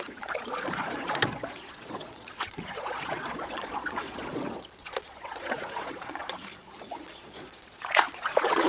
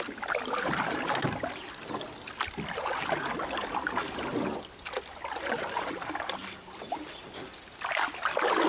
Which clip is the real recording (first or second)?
second